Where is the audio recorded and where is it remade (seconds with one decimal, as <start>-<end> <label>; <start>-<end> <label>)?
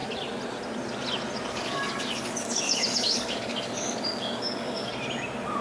0.0-1.5 recorded; 1.5-4.9 remade; 4.9-5.6 recorded